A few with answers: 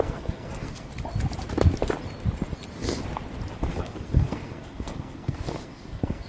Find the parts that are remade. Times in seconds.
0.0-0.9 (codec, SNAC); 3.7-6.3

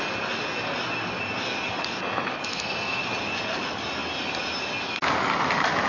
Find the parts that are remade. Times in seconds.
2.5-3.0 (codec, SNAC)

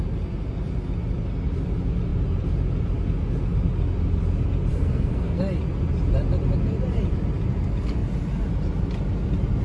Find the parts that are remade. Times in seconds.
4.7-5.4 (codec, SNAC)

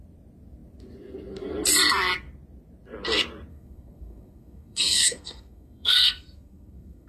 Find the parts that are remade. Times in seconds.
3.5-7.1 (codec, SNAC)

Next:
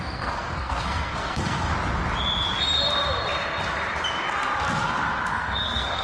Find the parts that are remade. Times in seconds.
0.0-1.7 (codec, SNAC); 5.3-6.0